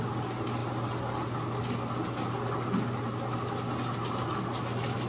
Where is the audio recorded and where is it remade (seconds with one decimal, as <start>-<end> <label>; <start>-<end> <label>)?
0.0-5.1 recorded